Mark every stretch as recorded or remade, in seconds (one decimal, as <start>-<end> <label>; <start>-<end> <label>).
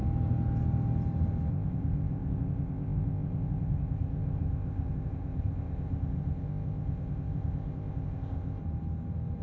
0.0-1.5 recorded; 1.5-8.6 remade; 8.6-9.4 recorded